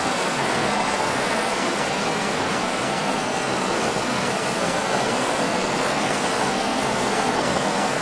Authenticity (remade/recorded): remade